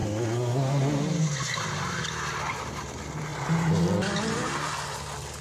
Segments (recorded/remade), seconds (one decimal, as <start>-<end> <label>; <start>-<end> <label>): 0.0-5.4 recorded